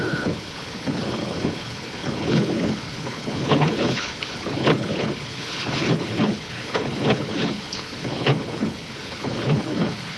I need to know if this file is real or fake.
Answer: fake